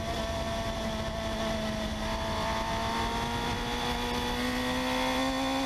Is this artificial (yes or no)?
no